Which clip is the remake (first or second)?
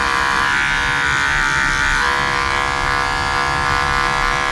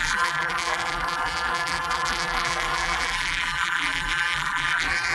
second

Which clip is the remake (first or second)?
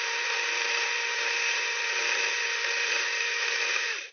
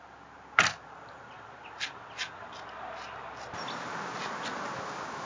first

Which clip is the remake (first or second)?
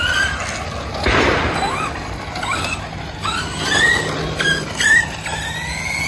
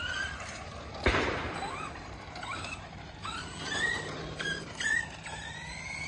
second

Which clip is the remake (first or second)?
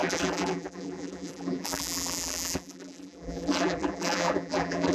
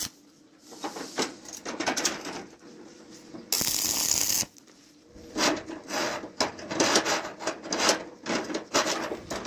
first